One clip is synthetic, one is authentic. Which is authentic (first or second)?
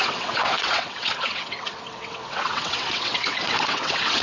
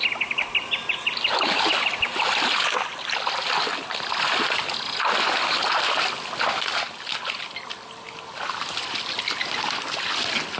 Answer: second